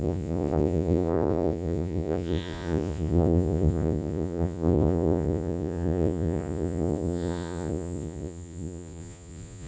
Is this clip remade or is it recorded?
remade